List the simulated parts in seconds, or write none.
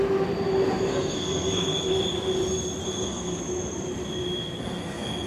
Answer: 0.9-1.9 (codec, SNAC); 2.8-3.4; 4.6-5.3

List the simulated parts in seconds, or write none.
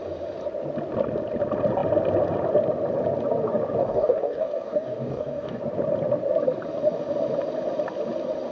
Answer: 3.8-5.6 (codec, DAC)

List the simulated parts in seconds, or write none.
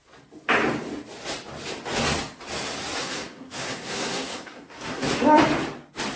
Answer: 3.0-5.1 (codec, SNAC)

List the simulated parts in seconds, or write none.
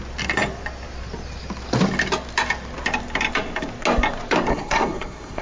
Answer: 4.5-5.4 (codec, SNAC)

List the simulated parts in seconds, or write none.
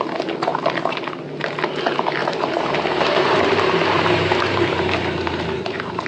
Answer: 2.2-6.1 (vocoder, BigVGAN v2)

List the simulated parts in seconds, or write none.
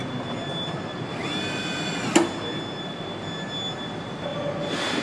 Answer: none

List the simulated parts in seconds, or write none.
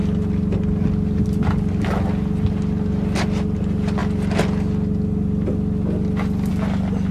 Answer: none